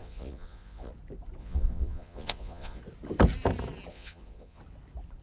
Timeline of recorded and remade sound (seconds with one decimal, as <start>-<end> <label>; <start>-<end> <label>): 0.0-0.9 remade; 0.9-1.4 recorded; 1.4-2.8 remade; 2.8-3.9 recorded; 3.9-4.6 remade; 4.6-5.2 recorded

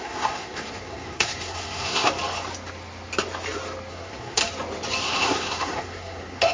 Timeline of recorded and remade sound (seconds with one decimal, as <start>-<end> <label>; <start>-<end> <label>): 0.0-2.1 remade; 2.1-3.9 recorded; 3.9-4.4 remade; 4.4-5.0 recorded; 5.0-6.5 remade

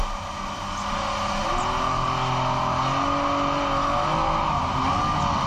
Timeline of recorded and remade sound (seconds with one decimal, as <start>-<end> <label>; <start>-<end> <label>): 0.0-5.5 recorded

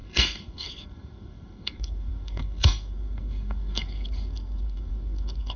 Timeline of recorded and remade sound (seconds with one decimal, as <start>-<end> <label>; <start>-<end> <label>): 0.0-5.6 remade

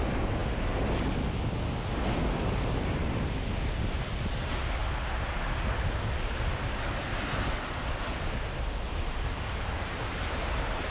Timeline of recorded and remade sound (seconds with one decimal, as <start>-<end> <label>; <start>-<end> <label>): 0.0-10.9 recorded

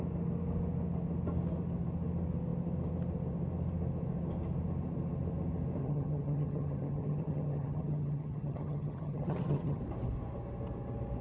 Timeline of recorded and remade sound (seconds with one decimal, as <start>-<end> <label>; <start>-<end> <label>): 0.0-5.8 recorded; 5.8-9.8 remade; 9.8-11.2 recorded

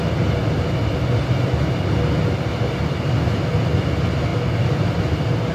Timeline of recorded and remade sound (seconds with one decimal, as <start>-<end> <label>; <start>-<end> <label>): 0.0-5.5 recorded

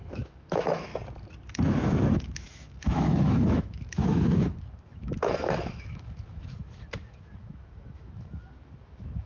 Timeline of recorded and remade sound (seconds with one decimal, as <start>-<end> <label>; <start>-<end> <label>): 0.0-0.9 remade; 0.9-1.7 recorded; 1.7-9.3 remade